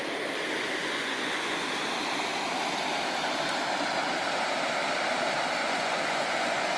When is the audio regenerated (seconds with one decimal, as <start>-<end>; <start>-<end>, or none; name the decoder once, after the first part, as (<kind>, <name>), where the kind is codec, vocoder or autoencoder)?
0.8-1.7 (vocoder, Vocos); 5.6-6.8